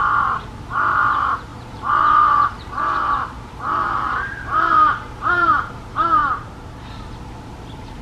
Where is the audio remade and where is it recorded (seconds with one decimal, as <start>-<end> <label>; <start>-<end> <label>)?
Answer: 0.0-1.5 recorded; 1.5-5.7 remade; 5.7-6.2 recorded; 6.2-6.9 remade; 6.9-8.0 recorded